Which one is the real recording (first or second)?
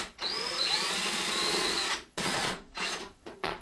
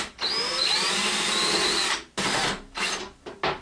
second